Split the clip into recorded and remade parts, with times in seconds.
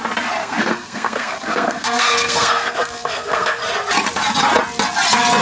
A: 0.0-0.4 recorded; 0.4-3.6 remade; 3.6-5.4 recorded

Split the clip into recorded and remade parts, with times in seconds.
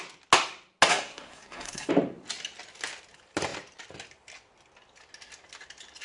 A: 0.0-0.9 recorded; 0.9-1.9 remade; 1.9-6.0 recorded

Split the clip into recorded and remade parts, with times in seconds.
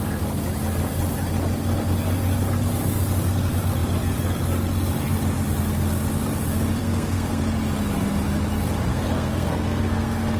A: 0.0-6.8 recorded; 6.8-7.4 remade; 7.4-8.9 recorded; 8.9-10.4 remade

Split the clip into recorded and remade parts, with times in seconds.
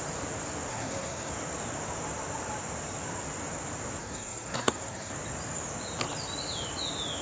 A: 0.0-0.7 recorded; 0.7-1.3 remade; 1.3-4.0 recorded; 4.0-5.1 remade; 5.1-7.2 recorded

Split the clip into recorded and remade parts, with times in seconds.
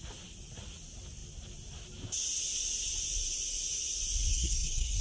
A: 0.0-4.3 recorded; 4.3-5.0 remade